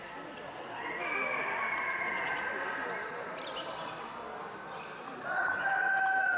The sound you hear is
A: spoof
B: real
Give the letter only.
B